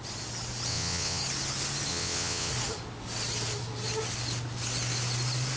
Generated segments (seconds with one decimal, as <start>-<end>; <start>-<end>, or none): 0.7-1.2; 1.9-2.5